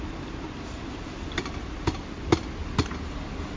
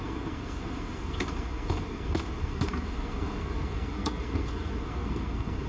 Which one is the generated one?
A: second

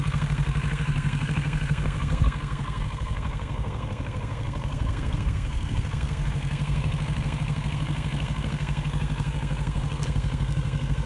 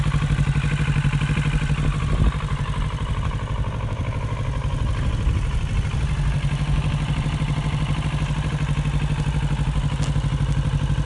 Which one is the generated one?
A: first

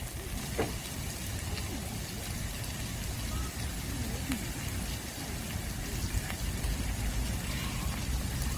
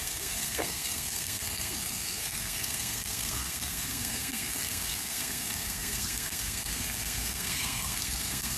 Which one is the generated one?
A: second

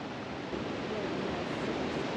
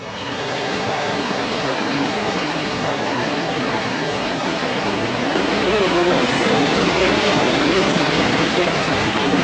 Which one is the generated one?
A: second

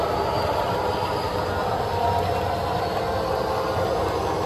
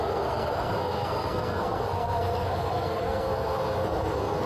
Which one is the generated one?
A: second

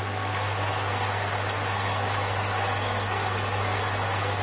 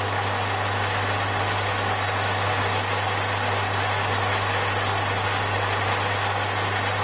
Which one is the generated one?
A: first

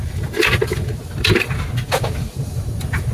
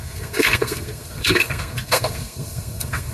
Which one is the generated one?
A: second